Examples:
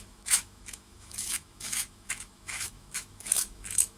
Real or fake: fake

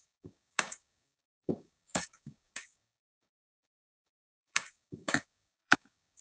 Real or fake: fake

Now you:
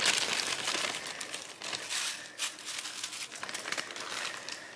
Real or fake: real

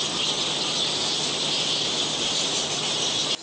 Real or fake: real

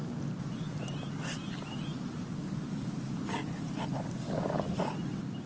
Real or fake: real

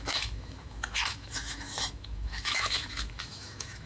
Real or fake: fake